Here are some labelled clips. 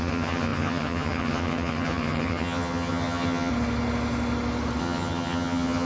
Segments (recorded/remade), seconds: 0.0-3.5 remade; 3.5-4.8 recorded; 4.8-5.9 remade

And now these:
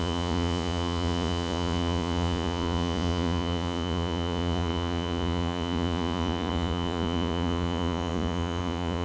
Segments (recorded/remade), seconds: 0.0-9.0 remade

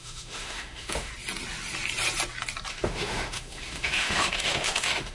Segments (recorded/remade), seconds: 0.0-1.1 remade; 1.1-2.7 recorded; 2.7-5.1 remade

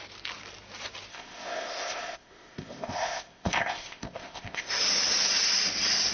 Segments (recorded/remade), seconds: 0.0-1.1 recorded; 1.1-4.7 remade; 4.7-6.1 recorded

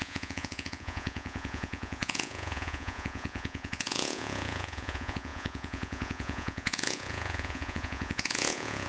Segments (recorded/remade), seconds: 0.0-8.9 remade

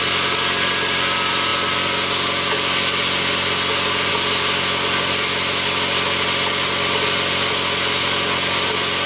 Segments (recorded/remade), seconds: 0.0-9.1 recorded

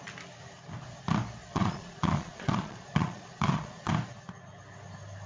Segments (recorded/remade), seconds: 0.0-1.5 recorded; 1.5-3.9 remade; 3.9-5.3 recorded

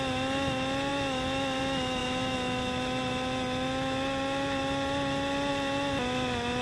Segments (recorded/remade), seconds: 0.0-6.6 recorded